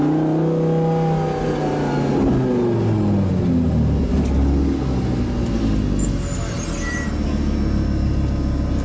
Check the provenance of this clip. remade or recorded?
recorded